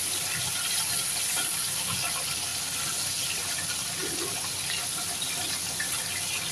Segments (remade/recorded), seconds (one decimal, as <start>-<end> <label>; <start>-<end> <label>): 0.0-6.5 recorded